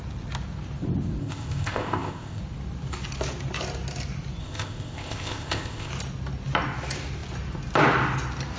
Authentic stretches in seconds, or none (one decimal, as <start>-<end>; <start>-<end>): 0.0-1.2; 2.4-4.4; 5.9-8.6